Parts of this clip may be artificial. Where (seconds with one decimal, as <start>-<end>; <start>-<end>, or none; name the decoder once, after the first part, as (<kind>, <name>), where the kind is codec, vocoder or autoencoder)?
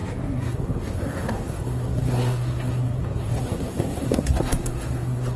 0.0-5.4 (codec, SNAC)